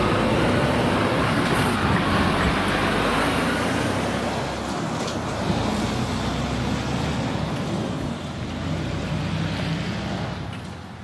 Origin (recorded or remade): recorded